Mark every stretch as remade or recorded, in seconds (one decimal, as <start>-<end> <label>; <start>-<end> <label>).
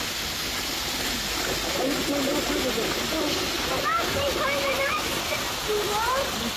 0.0-6.6 recorded